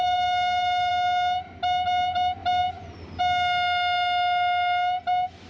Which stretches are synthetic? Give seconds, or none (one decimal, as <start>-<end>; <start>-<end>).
0.0-0.9

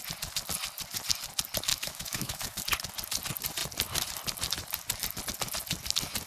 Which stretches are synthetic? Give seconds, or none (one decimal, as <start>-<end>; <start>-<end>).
1.7-2.6

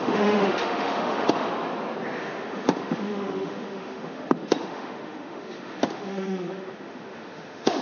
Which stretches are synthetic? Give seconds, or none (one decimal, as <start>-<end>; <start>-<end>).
0.0-1.5; 2.2-7.8

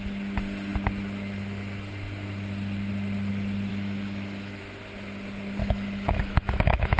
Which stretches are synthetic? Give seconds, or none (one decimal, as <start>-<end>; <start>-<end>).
3.7-4.6; 5.6-7.0

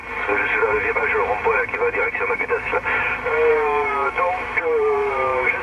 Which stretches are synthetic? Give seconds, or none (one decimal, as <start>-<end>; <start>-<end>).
2.3-2.7; 3.5-5.6

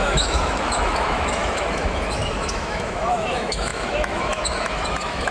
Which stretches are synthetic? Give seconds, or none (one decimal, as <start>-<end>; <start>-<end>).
0.0-5.3

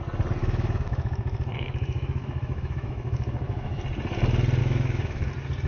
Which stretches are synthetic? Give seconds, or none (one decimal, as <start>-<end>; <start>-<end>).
0.4-3.8; 4.6-5.3